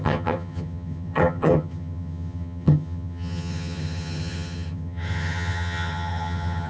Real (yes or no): no